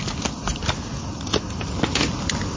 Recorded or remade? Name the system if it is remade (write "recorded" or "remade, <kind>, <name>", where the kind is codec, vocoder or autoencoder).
recorded